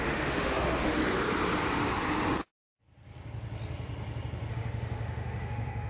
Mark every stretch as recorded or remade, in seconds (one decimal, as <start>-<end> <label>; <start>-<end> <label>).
0.0-1.0 remade; 1.0-4.5 recorded; 4.5-5.9 remade